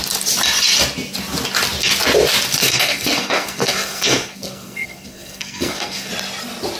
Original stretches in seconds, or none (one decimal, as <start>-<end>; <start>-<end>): 0.0-2.6; 6.1-6.8